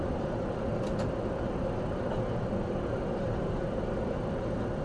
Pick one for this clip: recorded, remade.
recorded